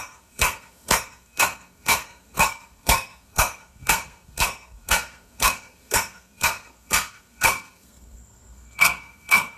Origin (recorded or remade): remade